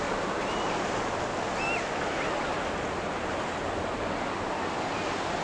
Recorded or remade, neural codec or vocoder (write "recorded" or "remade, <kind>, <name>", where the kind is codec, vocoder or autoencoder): recorded